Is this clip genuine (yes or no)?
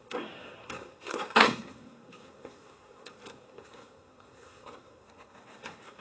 no